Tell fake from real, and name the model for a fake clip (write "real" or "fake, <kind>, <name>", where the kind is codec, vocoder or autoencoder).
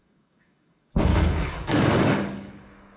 fake, codec, DAC